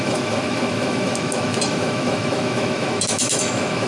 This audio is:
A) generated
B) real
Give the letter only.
A